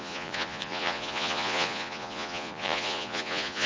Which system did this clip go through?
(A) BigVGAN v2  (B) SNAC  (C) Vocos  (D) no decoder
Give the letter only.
C